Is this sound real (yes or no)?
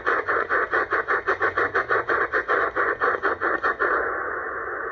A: no